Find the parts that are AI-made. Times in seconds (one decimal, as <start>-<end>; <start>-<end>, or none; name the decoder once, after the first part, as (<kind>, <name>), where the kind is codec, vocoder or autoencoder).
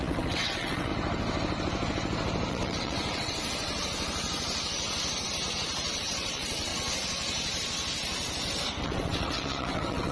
0.0-0.9 (vocoder, WaveNeXt); 2.5-3.4; 6.0-6.7; 8.8-10.1